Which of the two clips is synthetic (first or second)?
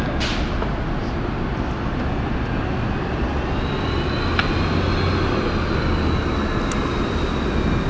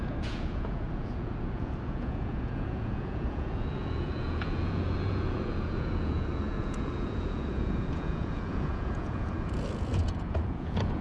second